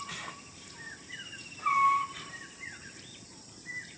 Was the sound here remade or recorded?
remade